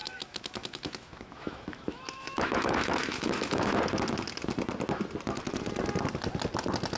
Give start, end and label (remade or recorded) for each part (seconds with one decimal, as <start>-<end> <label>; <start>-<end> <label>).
0.0-3.8 remade; 3.8-7.0 recorded